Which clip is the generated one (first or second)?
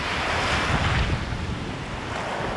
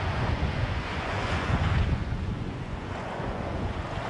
second